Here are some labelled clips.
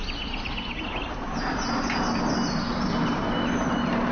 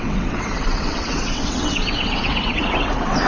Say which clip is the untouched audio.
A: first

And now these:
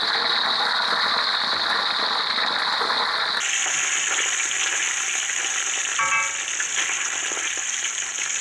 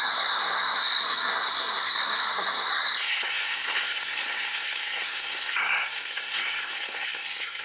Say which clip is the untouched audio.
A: first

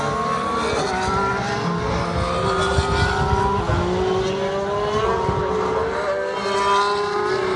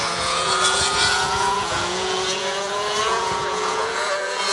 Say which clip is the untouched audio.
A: first